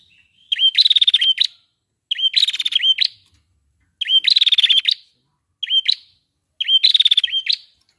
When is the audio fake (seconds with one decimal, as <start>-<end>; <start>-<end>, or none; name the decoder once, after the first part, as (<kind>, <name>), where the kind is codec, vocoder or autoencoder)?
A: none